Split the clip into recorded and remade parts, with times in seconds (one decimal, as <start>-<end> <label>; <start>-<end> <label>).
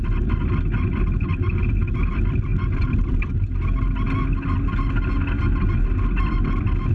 0.0-2.5 recorded; 2.5-3.3 remade; 3.3-6.9 recorded